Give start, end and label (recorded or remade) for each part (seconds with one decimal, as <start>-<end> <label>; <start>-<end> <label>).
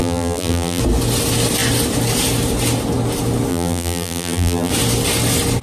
0.0-0.8 remade; 0.8-3.5 recorded; 3.5-4.7 remade; 4.7-5.6 recorded